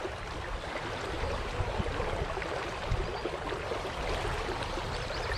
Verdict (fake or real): real